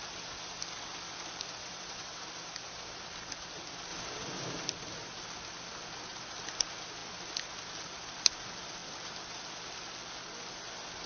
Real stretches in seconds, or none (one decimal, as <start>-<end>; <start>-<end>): 0.0-1.6; 2.2-11.1